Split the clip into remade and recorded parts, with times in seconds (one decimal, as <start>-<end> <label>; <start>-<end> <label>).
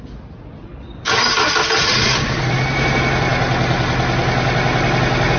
0.0-5.4 recorded